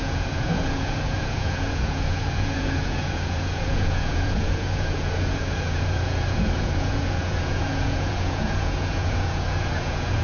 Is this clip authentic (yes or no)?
no